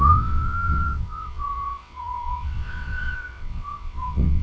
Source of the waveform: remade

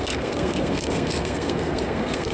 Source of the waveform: remade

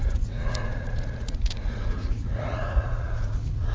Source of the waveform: remade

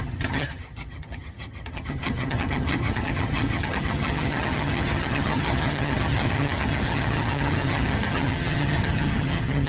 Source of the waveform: remade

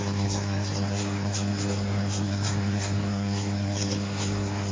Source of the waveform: remade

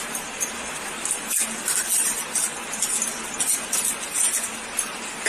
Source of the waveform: recorded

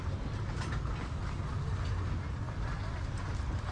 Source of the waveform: recorded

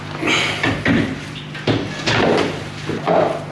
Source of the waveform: recorded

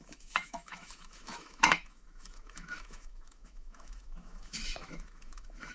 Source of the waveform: remade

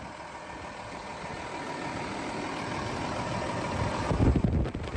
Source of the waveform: recorded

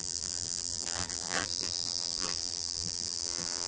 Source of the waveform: remade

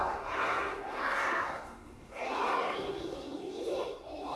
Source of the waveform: remade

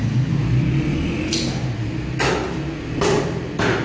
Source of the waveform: recorded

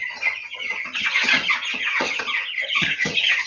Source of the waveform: remade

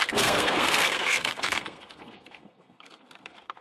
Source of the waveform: remade